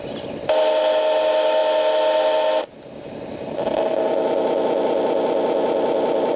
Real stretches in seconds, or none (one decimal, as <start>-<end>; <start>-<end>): 0.0-6.4